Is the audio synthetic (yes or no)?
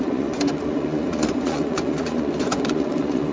yes